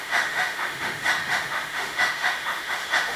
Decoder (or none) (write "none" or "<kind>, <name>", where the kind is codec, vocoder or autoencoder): autoencoder, DAC-VAE